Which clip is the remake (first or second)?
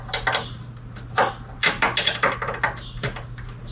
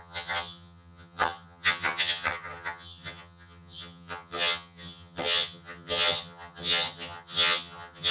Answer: second